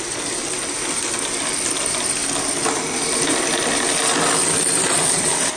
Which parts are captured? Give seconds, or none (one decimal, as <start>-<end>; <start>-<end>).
0.0-5.6